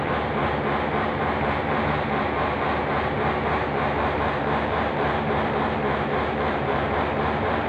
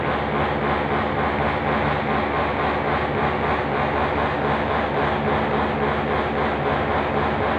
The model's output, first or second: first